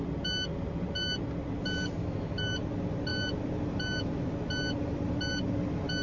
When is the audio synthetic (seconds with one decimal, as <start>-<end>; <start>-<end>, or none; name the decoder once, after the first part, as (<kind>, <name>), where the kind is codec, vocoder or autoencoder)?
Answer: 2.0-2.5 (autoencoder, DAC-VAE)